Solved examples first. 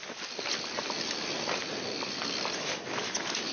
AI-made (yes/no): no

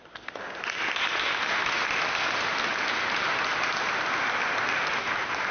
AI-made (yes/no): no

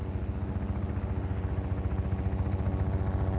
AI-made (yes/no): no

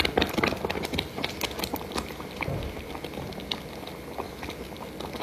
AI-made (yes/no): no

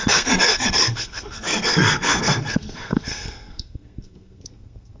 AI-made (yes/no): yes